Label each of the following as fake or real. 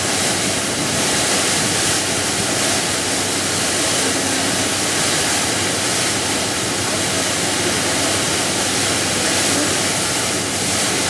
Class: real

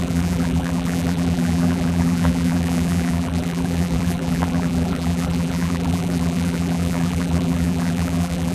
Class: fake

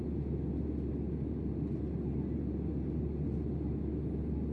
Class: real